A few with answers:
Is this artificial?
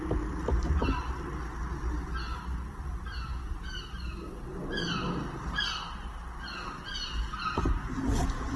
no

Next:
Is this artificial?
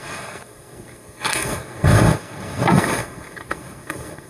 yes